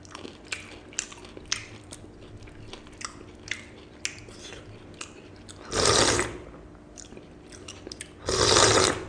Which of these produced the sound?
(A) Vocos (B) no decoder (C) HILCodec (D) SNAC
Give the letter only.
B